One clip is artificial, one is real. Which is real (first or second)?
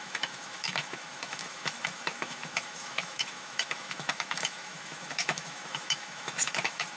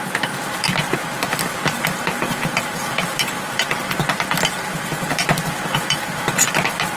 second